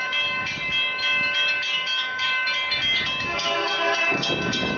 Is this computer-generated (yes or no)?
yes